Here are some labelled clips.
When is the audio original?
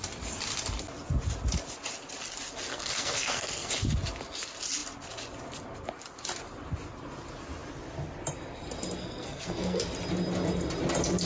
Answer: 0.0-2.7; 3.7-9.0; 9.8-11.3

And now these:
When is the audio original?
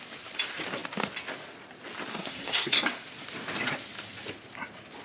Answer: 0.0-2.1; 2.8-5.0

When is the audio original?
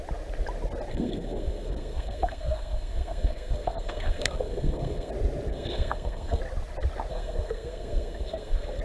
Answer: 0.0-0.9; 5.1-5.5; 6.4-7.1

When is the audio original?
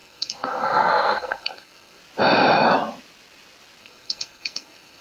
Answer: 2.0-3.8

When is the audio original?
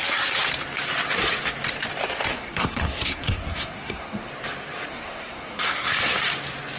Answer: 0.0-2.3; 4.3-4.9; 5.9-6.8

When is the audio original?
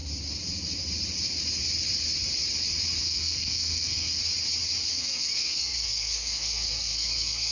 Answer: 0.0-3.0; 4.2-4.9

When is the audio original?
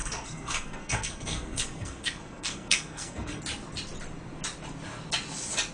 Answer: 3.4-5.7